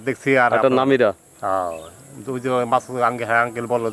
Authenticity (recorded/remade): recorded